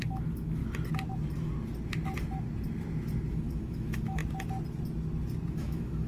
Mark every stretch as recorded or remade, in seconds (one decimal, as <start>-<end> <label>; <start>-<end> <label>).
0.0-0.6 remade; 0.6-3.3 recorded; 3.3-4.2 remade; 4.2-5.5 recorded; 5.5-6.1 remade